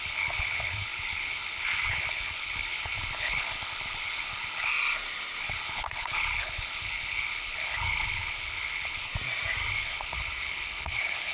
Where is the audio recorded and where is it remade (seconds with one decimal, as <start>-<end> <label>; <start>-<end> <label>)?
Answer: 0.0-4.7 remade; 4.7-5.4 recorded; 5.4-9.1 remade; 9.1-9.7 recorded; 9.7-11.3 remade